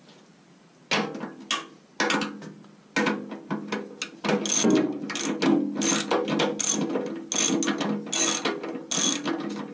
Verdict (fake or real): real